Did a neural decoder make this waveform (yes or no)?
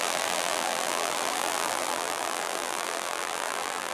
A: yes